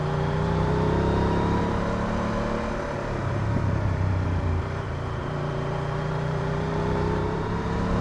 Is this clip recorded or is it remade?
remade